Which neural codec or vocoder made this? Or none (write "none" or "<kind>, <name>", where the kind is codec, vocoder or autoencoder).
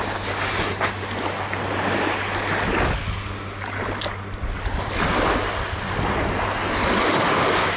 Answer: none